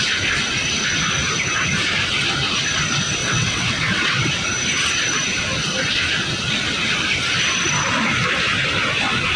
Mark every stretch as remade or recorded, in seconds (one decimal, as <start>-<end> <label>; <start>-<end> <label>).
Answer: 0.0-3.2 recorded; 3.2-4.3 remade; 4.3-9.4 recorded